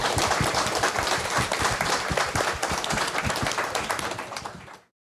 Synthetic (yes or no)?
no